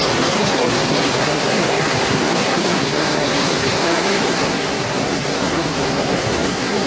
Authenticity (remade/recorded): remade